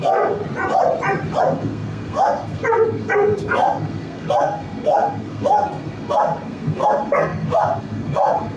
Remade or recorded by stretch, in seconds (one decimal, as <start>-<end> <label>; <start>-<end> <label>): 0.0-0.4 remade; 0.4-1.4 recorded; 1.4-8.6 remade